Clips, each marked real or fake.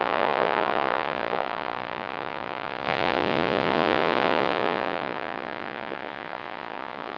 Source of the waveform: fake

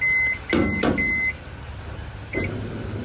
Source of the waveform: real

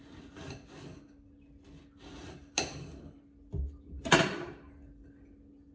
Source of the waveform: real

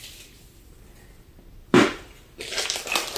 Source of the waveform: real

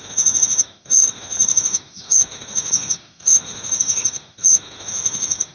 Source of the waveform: fake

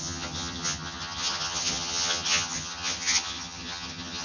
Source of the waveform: fake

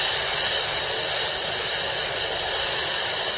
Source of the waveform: real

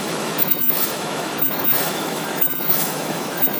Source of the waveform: fake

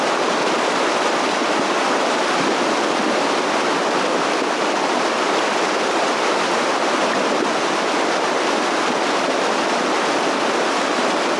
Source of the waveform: real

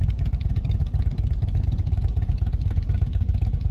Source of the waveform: fake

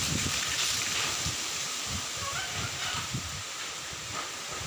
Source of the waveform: fake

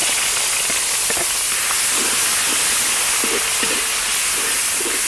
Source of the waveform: real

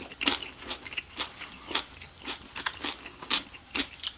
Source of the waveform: real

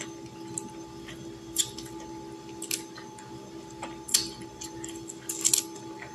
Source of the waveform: real